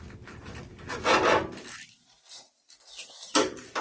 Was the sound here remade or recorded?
recorded